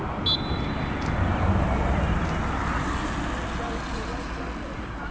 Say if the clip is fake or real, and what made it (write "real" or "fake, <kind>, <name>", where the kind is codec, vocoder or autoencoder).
real